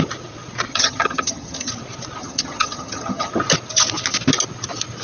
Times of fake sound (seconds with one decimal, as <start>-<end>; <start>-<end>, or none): 0.7-1.7; 2.2-3.3